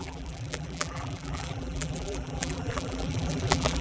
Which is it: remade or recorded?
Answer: remade